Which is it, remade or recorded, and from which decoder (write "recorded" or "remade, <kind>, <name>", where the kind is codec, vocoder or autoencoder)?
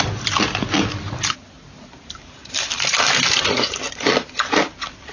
recorded